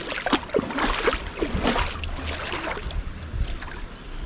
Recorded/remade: recorded